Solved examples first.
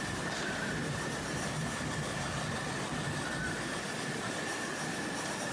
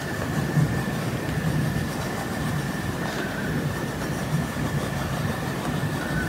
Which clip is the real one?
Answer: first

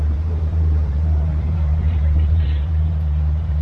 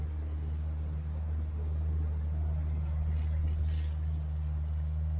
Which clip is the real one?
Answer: second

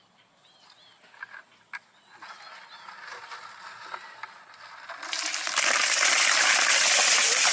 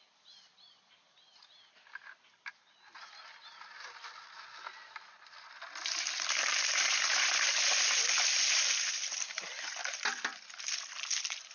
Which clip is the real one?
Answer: first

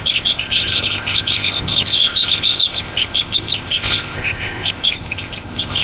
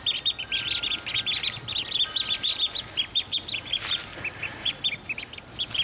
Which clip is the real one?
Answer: second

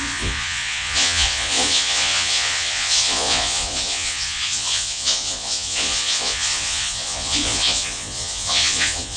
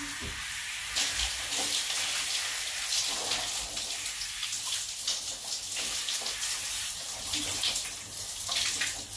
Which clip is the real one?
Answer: second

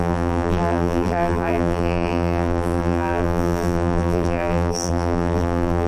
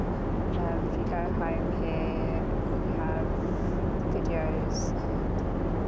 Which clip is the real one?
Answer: second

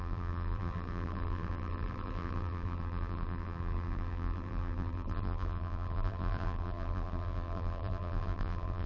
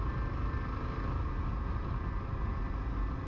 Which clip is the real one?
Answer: second